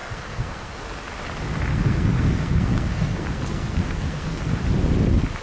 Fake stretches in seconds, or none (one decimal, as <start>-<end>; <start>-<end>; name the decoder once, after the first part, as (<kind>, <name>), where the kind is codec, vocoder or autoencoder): 0.0-0.8 (codec, SNAC); 1.7-4.6